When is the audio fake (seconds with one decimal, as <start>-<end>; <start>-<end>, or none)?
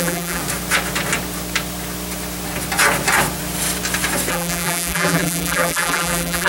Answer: 0.0-0.4; 4.3-6.5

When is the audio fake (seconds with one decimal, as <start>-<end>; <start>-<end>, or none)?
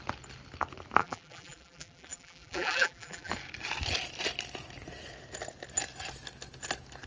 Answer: 1.0-3.3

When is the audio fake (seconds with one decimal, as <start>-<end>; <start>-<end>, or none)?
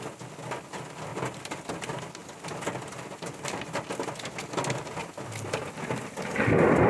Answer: 1.1-1.7; 2.2-3.6; 5.0-5.6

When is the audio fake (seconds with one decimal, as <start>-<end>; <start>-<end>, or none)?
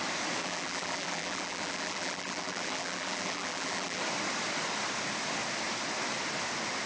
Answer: 0.4-4.0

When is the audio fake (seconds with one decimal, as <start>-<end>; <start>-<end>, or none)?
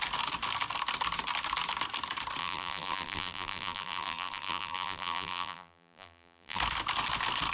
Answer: 2.4-6.6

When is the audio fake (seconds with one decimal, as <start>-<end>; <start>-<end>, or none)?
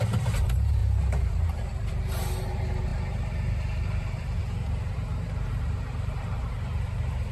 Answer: 0.0-7.3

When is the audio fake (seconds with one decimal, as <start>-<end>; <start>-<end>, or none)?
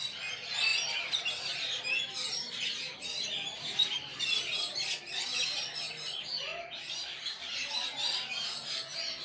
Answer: 0.7-4.2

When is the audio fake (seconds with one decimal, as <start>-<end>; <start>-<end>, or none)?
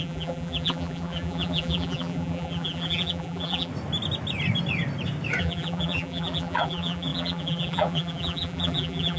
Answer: 0.0-3.7; 5.4-9.2